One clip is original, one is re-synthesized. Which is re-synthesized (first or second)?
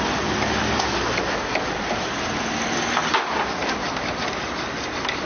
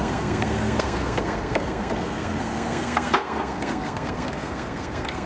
second